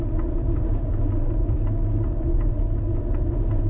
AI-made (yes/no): no